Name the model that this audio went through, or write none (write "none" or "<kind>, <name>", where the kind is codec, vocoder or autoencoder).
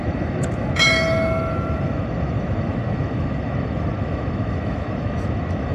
autoencoder, DAC-VAE